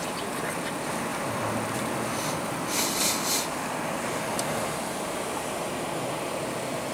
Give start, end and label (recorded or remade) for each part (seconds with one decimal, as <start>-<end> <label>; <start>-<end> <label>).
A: 0.0-6.9 recorded